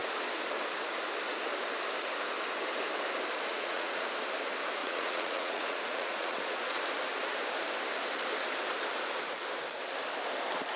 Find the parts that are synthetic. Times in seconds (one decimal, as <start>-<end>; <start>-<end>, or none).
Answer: 3.5-4.1; 4.8-6.8